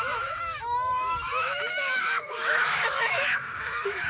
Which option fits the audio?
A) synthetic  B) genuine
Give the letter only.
A